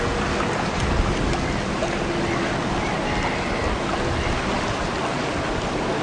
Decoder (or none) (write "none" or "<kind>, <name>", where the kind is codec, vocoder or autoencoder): none